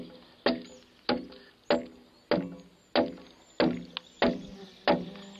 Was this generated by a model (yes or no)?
no